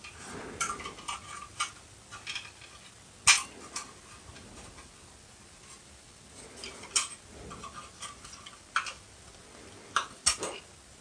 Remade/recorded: recorded